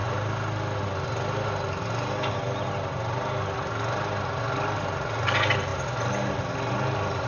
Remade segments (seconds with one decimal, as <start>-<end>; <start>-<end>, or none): none